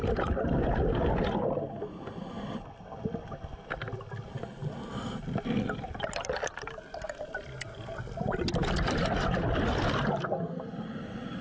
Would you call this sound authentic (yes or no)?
yes